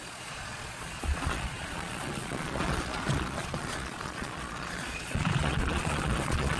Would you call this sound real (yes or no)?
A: no